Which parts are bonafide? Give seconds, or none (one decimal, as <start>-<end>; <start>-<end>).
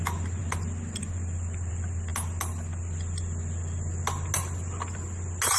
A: 0.0-5.6